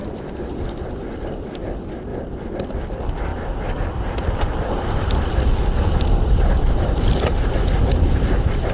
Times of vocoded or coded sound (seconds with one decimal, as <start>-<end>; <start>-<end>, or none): 0.0-1.5; 3.3-7.6